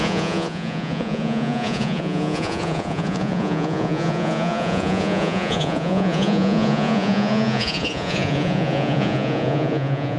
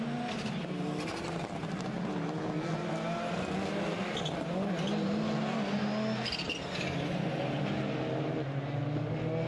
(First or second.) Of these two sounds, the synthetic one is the first